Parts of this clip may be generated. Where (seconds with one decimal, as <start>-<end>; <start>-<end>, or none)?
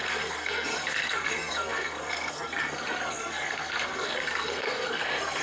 0.0-5.4